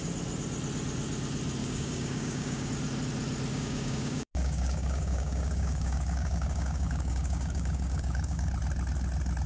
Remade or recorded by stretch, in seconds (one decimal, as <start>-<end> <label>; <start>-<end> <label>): 0.0-1.6 recorded; 1.6-2.7 remade; 2.7-3.5 recorded; 3.5-8.5 remade; 8.5-9.5 recorded